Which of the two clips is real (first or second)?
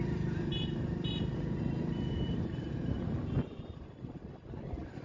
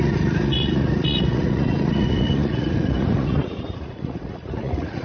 first